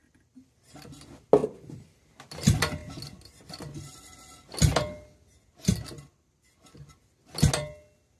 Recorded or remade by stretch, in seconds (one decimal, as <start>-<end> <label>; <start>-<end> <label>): 0.0-8.2 recorded